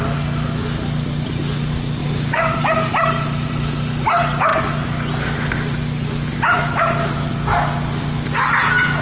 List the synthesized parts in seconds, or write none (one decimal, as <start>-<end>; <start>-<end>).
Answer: 2.0-2.9